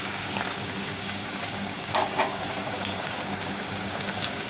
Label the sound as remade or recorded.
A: remade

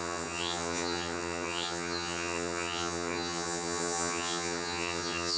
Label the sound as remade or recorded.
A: remade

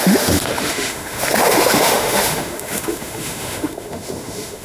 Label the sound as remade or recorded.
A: remade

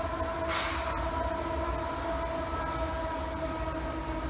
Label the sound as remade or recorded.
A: recorded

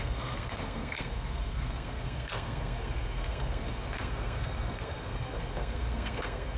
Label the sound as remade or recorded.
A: remade